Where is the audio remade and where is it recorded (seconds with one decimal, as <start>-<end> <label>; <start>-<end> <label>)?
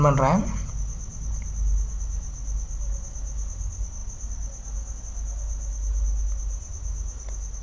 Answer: 0.0-7.6 recorded